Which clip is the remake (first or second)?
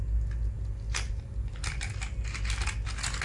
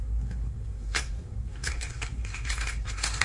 second